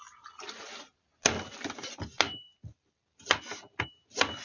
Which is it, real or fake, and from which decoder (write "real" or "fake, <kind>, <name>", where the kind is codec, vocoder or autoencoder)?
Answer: real